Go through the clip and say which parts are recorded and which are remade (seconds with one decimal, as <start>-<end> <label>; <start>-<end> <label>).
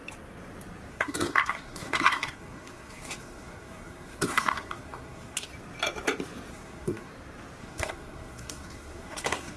0.0-0.9 recorded; 0.9-5.5 remade; 5.5-6.5 recorded; 6.5-7.1 remade; 7.1-7.6 recorded; 7.6-9.6 remade